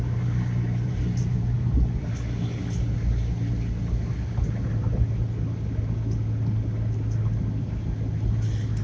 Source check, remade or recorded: recorded